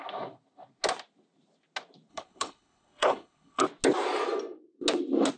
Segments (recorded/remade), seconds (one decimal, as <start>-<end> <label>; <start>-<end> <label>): 0.0-2.1 recorded; 2.1-3.6 remade; 3.6-5.4 recorded